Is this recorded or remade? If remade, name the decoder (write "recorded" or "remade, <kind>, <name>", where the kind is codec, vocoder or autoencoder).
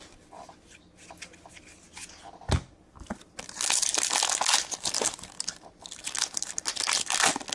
recorded